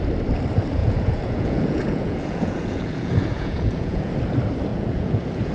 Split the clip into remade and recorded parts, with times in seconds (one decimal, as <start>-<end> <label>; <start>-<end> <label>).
0.0-0.8 recorded; 0.8-4.1 remade; 4.1-4.7 recorded; 4.7-5.5 remade